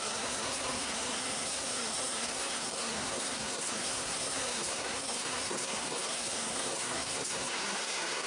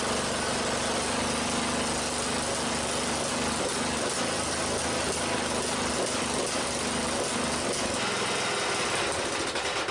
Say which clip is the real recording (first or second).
second